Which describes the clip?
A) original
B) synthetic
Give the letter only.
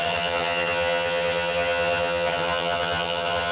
B